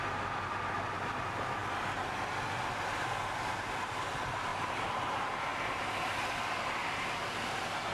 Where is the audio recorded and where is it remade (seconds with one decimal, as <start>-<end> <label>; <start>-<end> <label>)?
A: 0.0-4.5 recorded; 4.5-5.2 remade; 5.2-6.8 recorded; 6.8-7.9 remade